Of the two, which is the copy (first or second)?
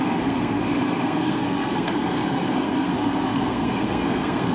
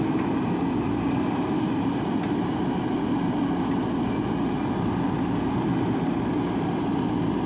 first